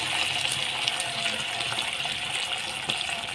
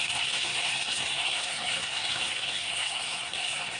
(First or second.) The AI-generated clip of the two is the second